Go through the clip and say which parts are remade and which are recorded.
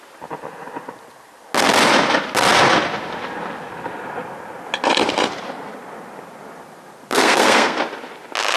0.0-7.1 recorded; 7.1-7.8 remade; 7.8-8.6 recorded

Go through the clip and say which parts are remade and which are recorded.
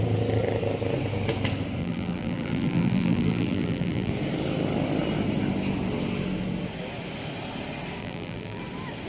0.0-1.8 recorded; 1.8-4.1 remade; 4.1-8.0 recorded; 8.0-8.6 remade; 8.6-9.1 recorded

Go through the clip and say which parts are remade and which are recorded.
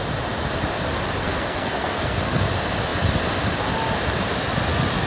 0.0-1.2 recorded; 1.2-2.4 remade; 2.4-5.1 recorded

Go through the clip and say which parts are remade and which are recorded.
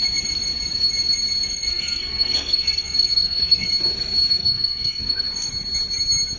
0.0-1.7 recorded; 1.7-3.7 remade; 3.7-4.4 recorded; 4.4-5.5 remade; 5.5-6.4 recorded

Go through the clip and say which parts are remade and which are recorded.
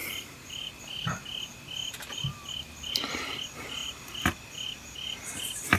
0.0-0.8 remade; 0.8-5.8 recorded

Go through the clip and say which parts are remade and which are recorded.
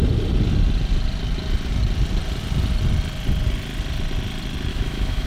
0.0-4.7 recorded; 4.7-5.3 remade